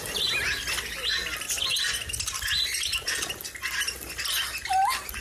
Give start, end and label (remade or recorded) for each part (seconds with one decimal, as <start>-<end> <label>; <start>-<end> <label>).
0.0-5.2 recorded